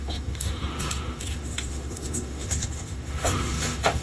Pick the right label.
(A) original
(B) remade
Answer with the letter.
B